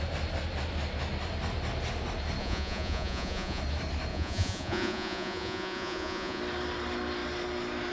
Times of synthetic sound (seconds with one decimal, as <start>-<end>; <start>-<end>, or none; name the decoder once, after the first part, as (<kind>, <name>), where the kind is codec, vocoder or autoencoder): 2.4-3.6 (vocoder, Vocos); 4.1-6.4